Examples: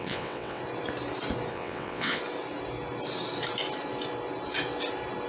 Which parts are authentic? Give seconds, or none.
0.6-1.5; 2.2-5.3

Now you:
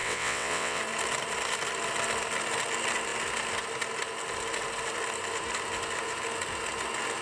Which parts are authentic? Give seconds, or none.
0.8-7.2

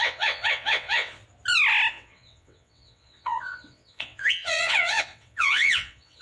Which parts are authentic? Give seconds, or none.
1.2-1.9

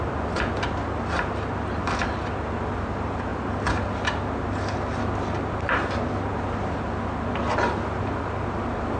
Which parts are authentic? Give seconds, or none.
0.0-9.0

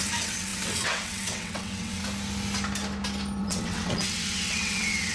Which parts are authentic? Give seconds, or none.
2.0-3.4

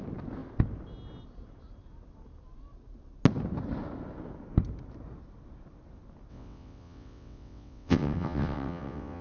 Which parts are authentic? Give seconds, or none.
0.0-6.3

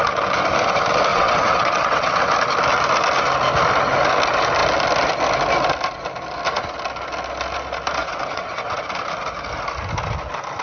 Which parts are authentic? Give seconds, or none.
0.0-1.1; 2.1-8.0; 8.8-10.6

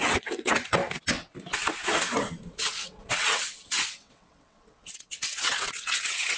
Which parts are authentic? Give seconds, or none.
0.8-2.5